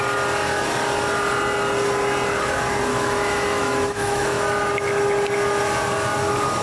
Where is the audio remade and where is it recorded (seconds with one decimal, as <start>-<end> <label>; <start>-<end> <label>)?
0.0-2.9 recorded; 2.9-4.7 remade; 4.7-6.6 recorded